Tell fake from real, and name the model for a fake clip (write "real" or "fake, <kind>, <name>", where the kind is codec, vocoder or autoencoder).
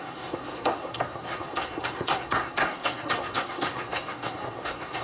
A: fake, codec, SNAC